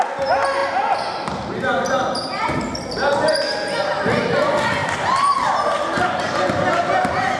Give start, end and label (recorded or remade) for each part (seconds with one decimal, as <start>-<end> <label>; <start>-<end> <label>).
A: 0.0-7.4 recorded